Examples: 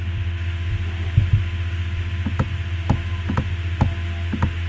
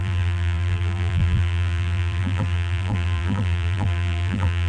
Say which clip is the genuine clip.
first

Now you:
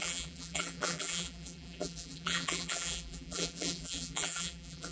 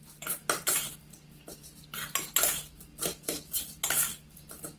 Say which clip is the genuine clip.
second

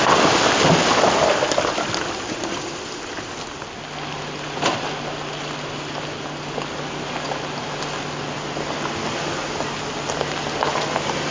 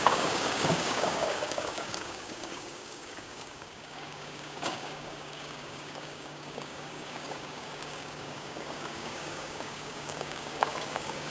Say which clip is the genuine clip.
first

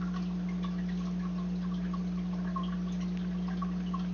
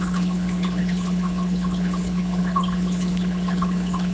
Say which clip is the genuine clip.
first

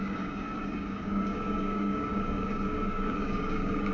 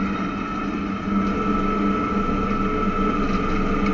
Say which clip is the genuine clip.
second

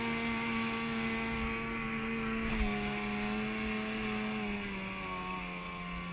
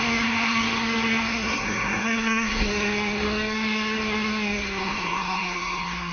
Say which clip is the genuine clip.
first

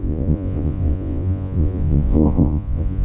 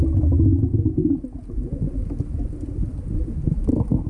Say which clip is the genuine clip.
second